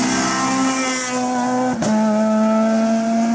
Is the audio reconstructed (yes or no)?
no